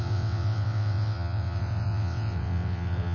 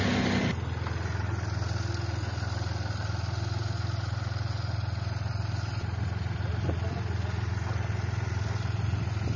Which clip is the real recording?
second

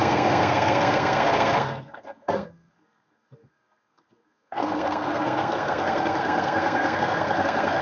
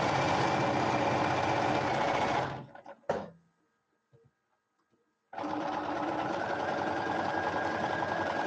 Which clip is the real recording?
second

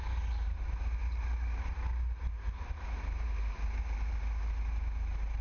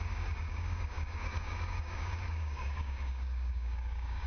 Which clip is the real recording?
first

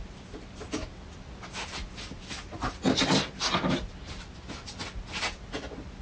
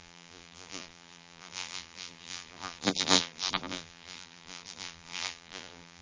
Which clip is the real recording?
first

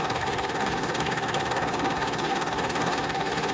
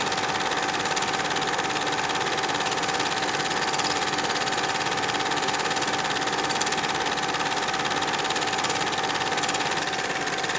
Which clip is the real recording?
second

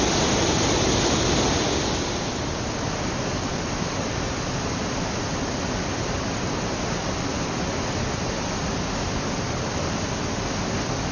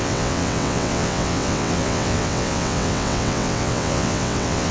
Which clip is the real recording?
first